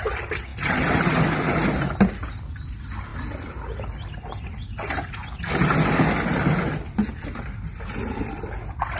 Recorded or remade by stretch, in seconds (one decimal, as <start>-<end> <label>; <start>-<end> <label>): 0.0-9.0 recorded